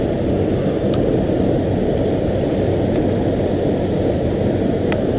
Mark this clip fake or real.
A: real